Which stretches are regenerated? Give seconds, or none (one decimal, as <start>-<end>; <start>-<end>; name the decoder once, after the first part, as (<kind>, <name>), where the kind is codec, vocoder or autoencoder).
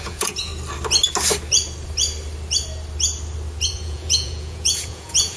0.0-0.5 (vocoder, Vocos); 3.7-5.4